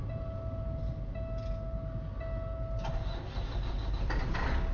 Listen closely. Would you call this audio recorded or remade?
recorded